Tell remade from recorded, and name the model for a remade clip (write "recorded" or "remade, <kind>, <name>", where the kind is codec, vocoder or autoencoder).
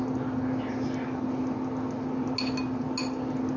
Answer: recorded